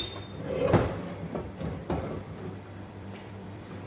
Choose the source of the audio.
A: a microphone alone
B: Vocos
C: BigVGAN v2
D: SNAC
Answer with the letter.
C